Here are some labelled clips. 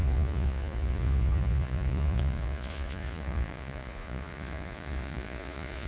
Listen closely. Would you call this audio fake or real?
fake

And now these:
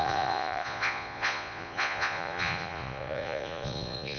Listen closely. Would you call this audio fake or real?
fake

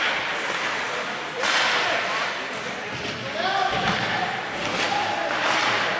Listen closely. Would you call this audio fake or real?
real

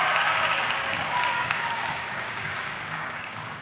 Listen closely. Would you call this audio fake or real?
fake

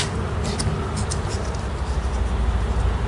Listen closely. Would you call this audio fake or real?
real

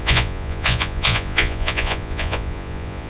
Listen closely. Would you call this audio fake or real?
fake